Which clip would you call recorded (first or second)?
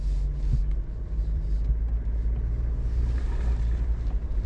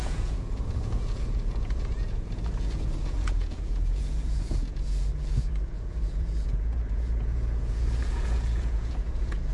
first